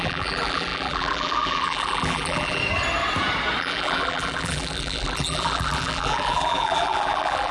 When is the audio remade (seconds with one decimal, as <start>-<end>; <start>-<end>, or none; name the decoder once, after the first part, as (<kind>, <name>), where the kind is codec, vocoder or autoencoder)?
0.0-2.6 (vocoder, BigVGAN v2); 3.6-7.5